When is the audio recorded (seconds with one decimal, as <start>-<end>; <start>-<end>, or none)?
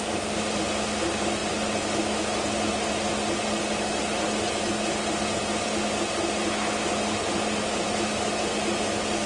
0.0-9.3